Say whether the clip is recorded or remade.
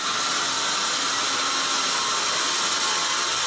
recorded